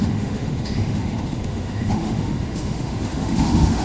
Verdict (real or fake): fake